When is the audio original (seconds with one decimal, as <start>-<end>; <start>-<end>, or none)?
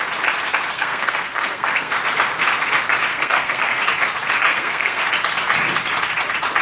0.0-0.7; 1.9-3.1; 3.8-4.5; 5.0-6.6